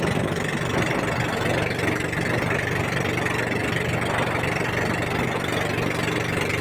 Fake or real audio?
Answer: real